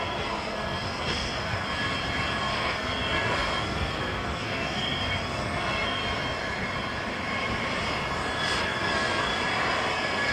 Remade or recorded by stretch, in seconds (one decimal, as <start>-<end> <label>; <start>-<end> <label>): 0.0-1.6 remade; 1.6-2.4 recorded; 2.4-6.0 remade; 6.0-8.6 recorded; 8.6-9.3 remade; 9.3-9.9 recorded; 9.9-10.3 remade